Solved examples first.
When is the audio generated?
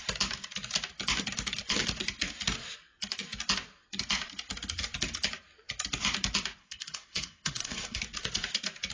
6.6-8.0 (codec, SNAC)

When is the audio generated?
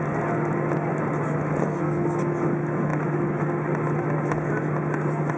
1.6-2.2 (codec, SNAC)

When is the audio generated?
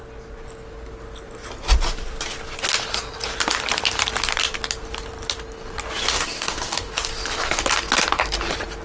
6.1-6.9 (codec, DAC)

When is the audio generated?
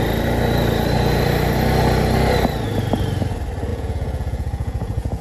3.7-5.2 (vocoder, Vocos)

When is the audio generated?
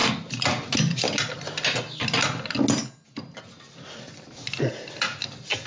none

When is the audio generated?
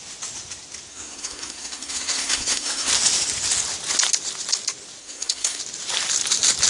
0.9-2.9 (codec, SNAC); 5.0-5.6